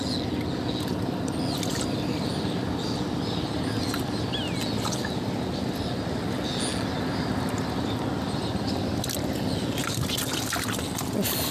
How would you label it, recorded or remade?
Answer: recorded